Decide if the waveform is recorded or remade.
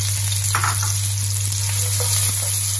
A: recorded